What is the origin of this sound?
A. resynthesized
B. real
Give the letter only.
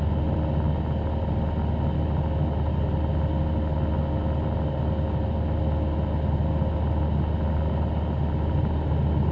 B